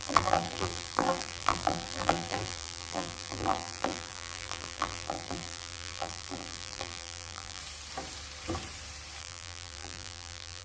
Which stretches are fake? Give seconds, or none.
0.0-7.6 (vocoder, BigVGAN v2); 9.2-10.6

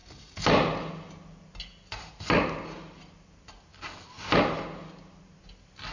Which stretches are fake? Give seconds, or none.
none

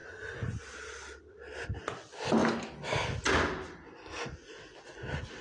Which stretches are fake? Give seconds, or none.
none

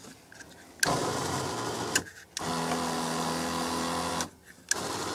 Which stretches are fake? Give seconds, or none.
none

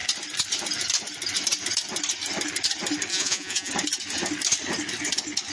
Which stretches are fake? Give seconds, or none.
3.1-3.7 (vocoder, Vocos)

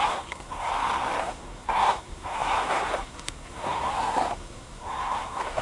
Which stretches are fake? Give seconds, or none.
0.0-0.7 (codec, SNAC); 1.2-5.6

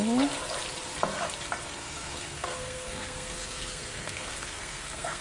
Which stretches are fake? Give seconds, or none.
1.8-5.2 (codec, SNAC)

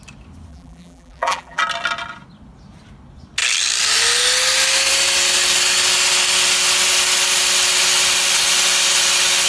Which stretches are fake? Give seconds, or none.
0.5-1.6 (vocoder, BigVGAN v2)